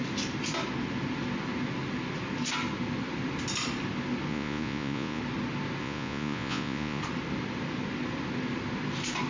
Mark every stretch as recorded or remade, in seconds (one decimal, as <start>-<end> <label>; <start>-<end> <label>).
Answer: 0.0-4.3 recorded; 4.3-5.2 remade; 5.2-5.8 recorded; 5.8-7.0 remade; 7.0-9.3 recorded